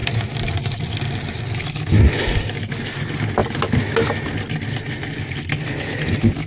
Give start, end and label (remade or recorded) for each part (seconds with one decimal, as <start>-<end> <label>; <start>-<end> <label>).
0.0-0.8 remade; 0.8-6.5 recorded